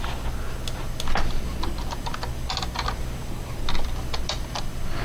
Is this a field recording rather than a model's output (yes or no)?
yes